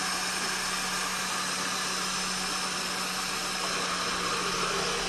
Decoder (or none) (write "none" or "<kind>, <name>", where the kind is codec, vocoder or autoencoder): none